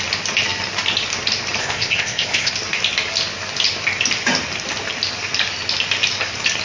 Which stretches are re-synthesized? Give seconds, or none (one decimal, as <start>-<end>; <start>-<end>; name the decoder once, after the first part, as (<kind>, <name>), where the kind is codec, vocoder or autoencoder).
1.6-2.5 (codec, ZipCodec)